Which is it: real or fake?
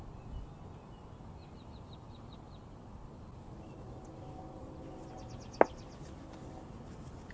real